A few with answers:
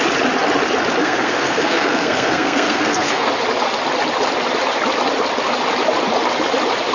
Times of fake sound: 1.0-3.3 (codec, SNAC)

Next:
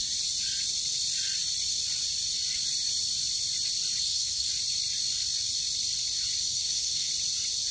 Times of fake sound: 4.0-4.5 (codec, SNAC); 6.5-7.1

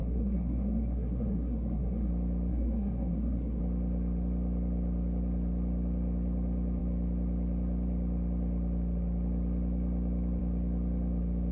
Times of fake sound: 0.0-2.1 (codec, SNAC); 2.5-3.6